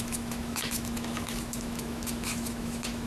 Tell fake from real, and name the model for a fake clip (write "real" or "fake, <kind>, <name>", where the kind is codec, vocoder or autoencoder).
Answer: fake, autoencoder, DAC-VAE